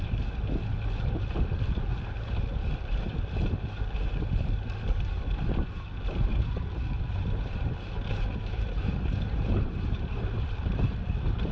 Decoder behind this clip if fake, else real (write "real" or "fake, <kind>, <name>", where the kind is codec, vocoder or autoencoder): fake, vocoder, BigVGAN v2